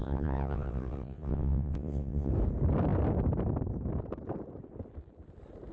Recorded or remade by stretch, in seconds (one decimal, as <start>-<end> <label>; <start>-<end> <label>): 0.0-2.3 remade; 2.3-5.7 recorded